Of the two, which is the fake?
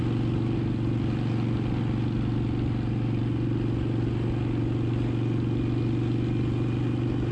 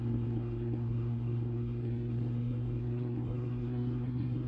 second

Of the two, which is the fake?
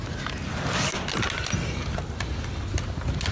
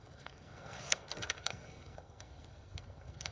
second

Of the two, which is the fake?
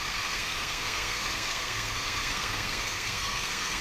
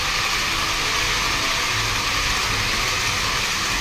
first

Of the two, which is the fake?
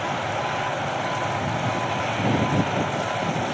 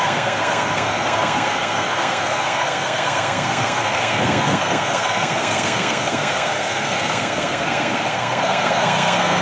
second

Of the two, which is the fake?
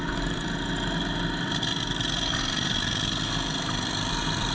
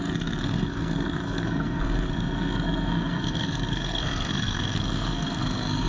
second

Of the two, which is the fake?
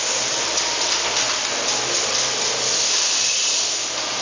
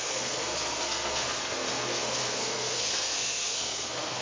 second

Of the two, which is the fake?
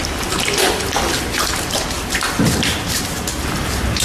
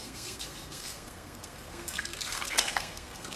second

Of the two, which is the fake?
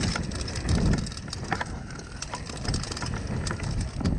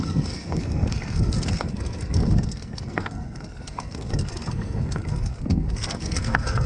second